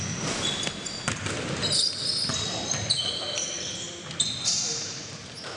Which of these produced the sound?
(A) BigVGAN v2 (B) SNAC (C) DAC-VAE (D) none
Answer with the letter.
D